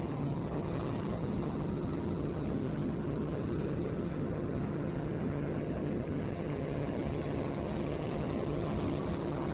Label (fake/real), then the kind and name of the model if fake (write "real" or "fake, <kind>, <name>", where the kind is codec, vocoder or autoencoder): fake, vocoder, HiFi-GAN